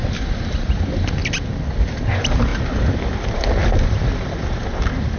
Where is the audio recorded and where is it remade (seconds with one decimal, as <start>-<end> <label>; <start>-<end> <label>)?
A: 0.0-5.2 recorded